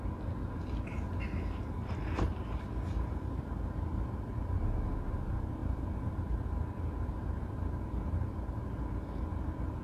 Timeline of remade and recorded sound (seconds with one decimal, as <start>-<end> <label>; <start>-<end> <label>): 0.0-9.8 recorded